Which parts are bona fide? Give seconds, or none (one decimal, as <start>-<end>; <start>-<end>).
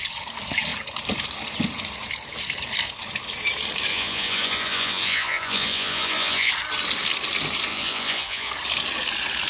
0.0-3.9; 6.5-7.7; 8.5-9.5